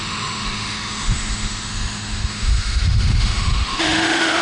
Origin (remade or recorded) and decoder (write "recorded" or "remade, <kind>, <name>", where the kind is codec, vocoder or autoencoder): remade, autoencoder, DAC-VAE